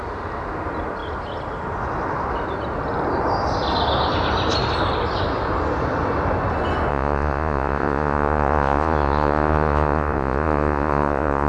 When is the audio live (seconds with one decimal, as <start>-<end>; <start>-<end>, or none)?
0.0-6.9